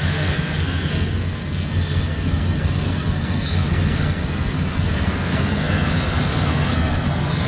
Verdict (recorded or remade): remade